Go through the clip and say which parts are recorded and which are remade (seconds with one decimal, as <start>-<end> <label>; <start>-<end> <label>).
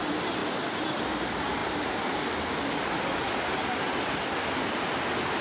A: 0.0-0.4 recorded; 0.4-1.0 remade; 1.0-5.4 recorded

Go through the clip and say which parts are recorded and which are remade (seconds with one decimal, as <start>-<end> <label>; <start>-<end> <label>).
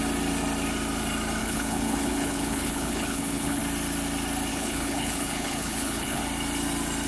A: 0.0-1.4 recorded; 1.4-3.6 remade; 3.6-4.5 recorded; 4.5-6.2 remade; 6.2-7.1 recorded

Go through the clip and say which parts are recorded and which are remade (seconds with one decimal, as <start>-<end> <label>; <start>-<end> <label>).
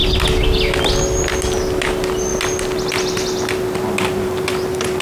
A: 0.0-5.0 recorded